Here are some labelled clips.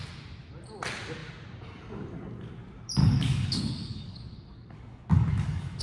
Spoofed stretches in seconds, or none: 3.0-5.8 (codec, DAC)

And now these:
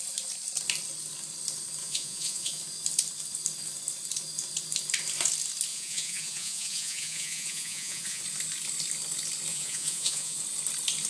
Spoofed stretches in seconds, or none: 1.8-2.6 (vocoder, Vocos); 5.7-8.2; 9.5-10.4

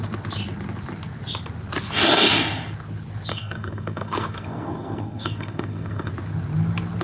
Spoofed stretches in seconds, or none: 3.3-6.1 (codec, SNAC)

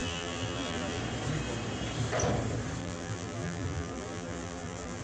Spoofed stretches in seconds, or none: 0.0-1.0 (vocoder, BigVGAN v2); 2.8-5.0

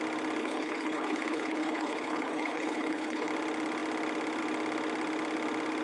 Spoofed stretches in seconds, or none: 0.4-3.3 (codec, HILCodec)